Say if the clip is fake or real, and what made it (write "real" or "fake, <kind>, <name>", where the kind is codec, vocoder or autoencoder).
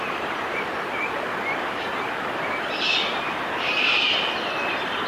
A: fake, vocoder, BigVGAN v2